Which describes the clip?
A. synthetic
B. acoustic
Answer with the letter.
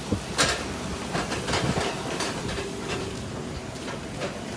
B